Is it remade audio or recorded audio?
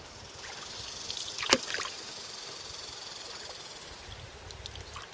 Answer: recorded